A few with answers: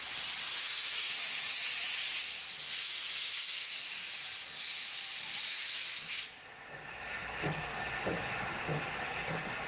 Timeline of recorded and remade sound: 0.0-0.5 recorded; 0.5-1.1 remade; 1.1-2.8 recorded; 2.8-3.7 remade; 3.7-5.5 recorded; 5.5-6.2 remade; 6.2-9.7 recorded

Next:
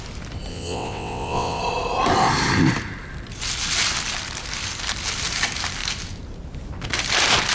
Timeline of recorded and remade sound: 0.0-0.5 recorded; 0.5-1.6 remade; 1.6-7.5 recorded

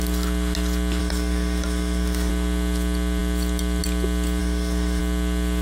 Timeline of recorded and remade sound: 0.0-1.0 recorded; 1.0-2.3 remade; 2.3-4.4 recorded; 4.4-5.0 remade; 5.0-5.6 recorded

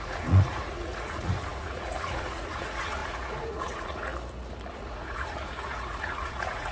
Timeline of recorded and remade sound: 0.0-4.1 remade; 4.1-4.7 recorded; 4.7-6.7 remade

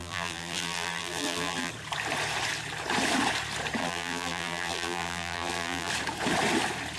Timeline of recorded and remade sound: 0.0-1.7 remade; 1.7-3.8 recorded; 3.8-5.9 remade; 5.9-7.0 recorded

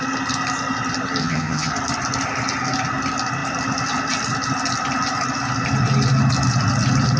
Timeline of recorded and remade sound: 0.0-1.2 recorded; 1.2-1.7 remade; 1.7-7.2 recorded